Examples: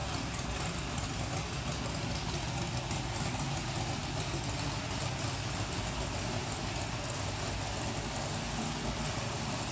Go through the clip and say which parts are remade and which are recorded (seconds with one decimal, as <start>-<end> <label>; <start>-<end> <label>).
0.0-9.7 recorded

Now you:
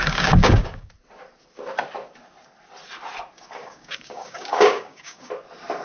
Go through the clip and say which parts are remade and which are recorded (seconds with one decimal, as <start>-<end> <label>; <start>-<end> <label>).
0.0-0.9 remade; 0.9-3.6 recorded; 3.6-5.3 remade; 5.3-5.8 recorded

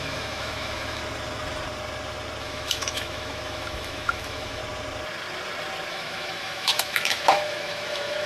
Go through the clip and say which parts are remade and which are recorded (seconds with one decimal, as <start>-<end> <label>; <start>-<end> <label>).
0.0-1.0 remade; 1.0-2.4 recorded; 2.4-4.6 remade; 4.6-5.9 recorded; 5.9-8.3 remade

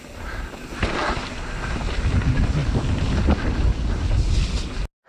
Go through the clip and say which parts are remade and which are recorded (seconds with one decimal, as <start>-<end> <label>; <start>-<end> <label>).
0.0-5.1 recorded

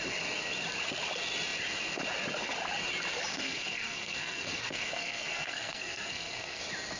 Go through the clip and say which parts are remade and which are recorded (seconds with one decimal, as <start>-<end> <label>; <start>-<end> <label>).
0.0-3.3 recorded; 3.3-6.6 remade; 6.6-7.0 recorded